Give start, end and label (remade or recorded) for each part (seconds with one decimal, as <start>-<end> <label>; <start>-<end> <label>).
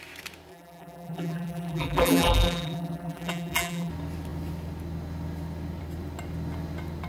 0.0-0.5 recorded; 0.5-3.9 remade; 3.9-7.1 recorded